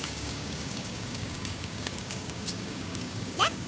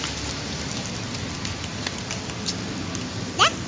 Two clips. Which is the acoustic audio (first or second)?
second